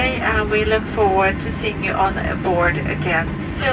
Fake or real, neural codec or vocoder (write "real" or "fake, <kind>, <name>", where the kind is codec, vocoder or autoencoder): real